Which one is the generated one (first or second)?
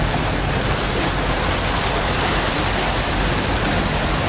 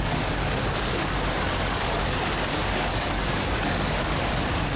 second